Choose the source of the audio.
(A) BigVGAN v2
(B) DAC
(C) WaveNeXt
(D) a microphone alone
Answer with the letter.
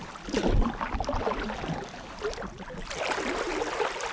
D